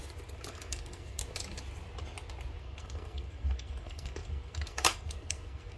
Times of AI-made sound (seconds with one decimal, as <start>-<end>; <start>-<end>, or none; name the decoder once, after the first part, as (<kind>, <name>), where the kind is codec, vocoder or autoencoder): 0.5-1.2 (codec, SNAC); 2.6-5.8